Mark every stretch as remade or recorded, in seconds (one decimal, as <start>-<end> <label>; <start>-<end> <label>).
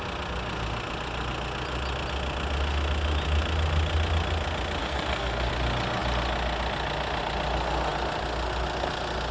0.0-4.8 recorded; 4.8-5.5 remade; 5.5-9.3 recorded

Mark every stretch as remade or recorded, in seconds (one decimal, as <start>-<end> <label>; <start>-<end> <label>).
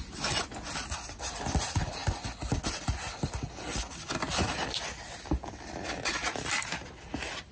0.0-7.5 recorded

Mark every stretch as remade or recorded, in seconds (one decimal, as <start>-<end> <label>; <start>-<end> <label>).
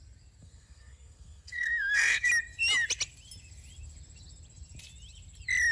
0.0-0.4 recorded; 0.4-2.3 remade; 2.3-5.7 recorded